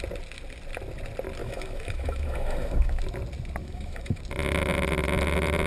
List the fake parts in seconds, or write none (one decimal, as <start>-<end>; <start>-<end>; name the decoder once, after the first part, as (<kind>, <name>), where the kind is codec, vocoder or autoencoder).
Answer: 1.4-3.0 (autoencoder, DAC-VAE); 3.6-4.2